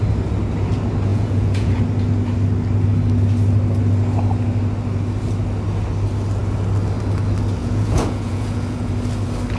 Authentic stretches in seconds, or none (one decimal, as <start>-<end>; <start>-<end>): 0.0-1.1; 1.8-7.6; 8.9-9.6